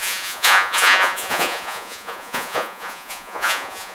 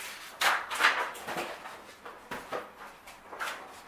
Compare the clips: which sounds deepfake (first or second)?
first